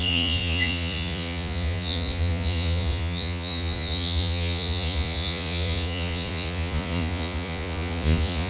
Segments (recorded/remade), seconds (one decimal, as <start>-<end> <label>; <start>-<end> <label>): 0.0-8.5 remade